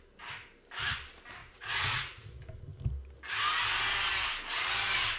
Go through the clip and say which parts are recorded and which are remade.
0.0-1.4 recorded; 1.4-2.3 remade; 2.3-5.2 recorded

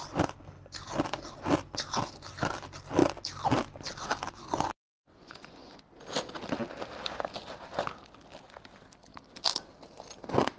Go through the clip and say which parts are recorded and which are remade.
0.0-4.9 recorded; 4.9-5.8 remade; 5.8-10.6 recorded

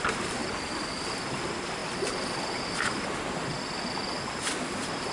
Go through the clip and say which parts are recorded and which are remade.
0.0-5.1 recorded

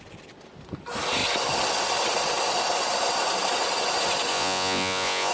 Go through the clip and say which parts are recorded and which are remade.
0.0-4.3 recorded; 4.3-5.3 remade